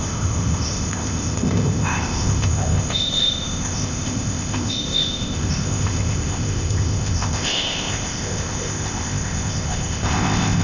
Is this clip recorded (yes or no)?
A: no